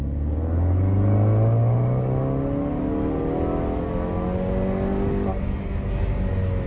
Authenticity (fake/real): real